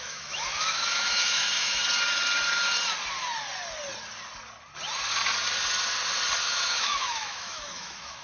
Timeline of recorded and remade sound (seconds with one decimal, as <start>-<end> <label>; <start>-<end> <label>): 0.0-1.8 remade; 1.8-6.4 recorded; 6.4-8.2 remade